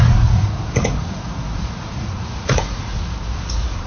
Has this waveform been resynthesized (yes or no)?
yes